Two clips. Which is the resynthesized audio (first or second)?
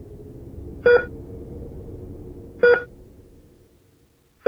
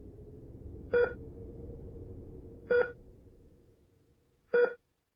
second